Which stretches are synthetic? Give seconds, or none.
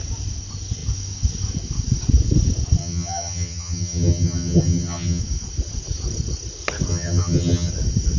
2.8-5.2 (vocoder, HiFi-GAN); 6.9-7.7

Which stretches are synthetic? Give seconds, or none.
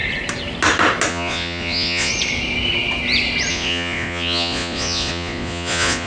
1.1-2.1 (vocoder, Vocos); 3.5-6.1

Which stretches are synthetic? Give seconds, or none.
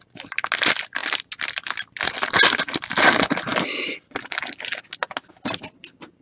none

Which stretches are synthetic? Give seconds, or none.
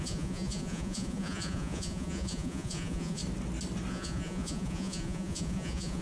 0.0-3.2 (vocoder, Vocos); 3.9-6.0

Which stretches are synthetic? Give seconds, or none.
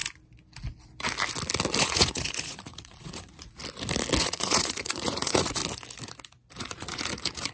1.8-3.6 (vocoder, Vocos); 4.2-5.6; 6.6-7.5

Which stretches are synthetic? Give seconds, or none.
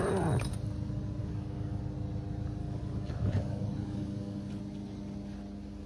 1.2-1.8 (codec, DAC); 2.6-4.6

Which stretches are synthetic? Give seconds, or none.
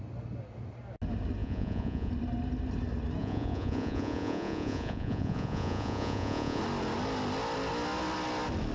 1.4-2.1 (vocoder, Vocos); 3.2-6.6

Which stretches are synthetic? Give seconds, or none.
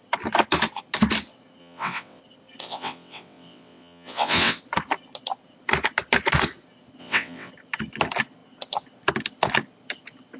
1.6-2.2 (vocoder, WaveNeXt); 2.6-4.6; 7.0-7.5